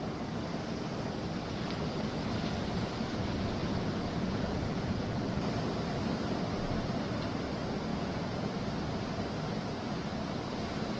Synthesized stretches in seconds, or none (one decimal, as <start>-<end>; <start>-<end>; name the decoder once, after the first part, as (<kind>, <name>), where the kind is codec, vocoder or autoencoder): 3.6-5.2 (vocoder, Vocos); 7.9-8.5